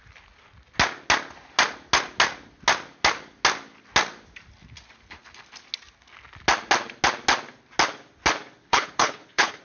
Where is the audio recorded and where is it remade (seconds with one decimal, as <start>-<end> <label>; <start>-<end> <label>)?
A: 0.0-8.6 recorded; 8.6-9.6 remade